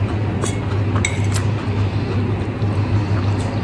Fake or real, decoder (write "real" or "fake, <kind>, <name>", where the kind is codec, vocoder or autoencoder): real